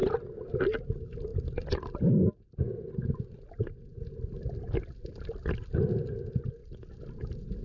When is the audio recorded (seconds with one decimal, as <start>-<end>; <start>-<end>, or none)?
0.0-7.6